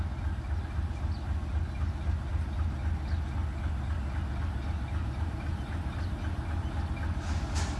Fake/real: real